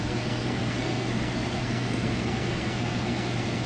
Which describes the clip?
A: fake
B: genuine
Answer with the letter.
A